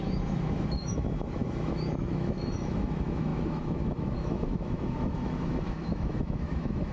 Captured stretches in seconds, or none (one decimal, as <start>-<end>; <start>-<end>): none